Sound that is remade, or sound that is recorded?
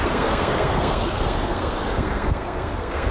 remade